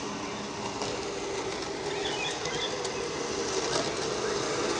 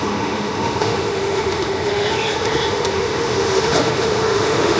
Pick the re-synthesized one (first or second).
second